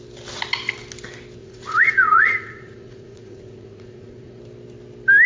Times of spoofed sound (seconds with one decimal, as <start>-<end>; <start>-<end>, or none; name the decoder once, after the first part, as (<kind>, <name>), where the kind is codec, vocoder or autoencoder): 1.4-4.4 (vocoder, Vocos)